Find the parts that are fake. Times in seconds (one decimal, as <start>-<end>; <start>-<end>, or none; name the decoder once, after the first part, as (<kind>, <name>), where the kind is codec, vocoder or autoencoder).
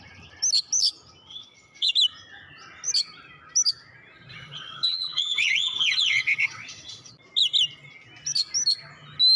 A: 1.3-1.9 (vocoder, WaveNeXt); 4.3-7.1